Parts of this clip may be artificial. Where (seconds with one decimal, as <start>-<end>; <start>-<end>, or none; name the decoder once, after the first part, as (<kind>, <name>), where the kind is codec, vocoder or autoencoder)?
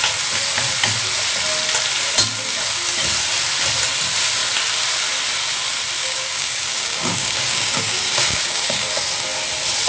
6.0-8.8 (codec, DAC)